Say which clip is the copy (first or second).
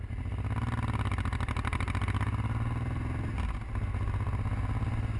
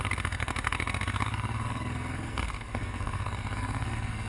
second